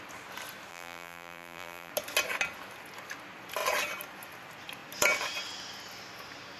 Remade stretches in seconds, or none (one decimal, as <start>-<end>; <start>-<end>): 0.7-1.9